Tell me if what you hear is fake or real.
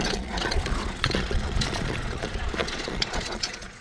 fake